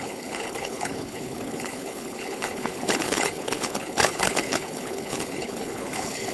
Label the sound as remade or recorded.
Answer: remade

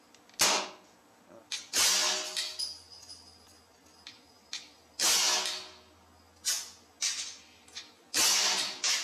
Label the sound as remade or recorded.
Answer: recorded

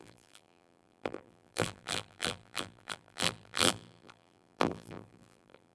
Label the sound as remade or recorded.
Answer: remade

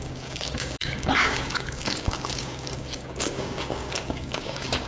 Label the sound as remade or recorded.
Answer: remade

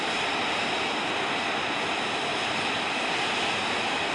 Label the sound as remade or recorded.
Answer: recorded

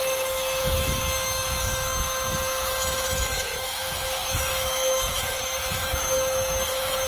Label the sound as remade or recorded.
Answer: remade